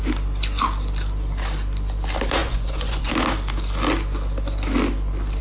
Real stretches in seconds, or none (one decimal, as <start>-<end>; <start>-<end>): 0.0-2.4; 3.1-5.4